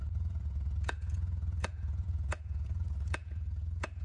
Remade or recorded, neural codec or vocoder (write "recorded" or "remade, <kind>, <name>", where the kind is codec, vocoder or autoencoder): remade, vocoder, Vocos